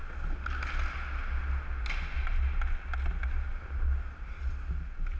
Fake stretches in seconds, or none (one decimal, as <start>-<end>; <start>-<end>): none